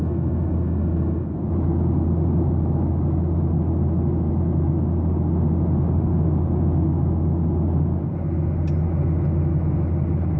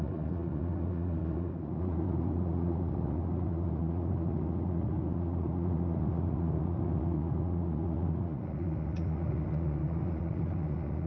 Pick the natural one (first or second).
first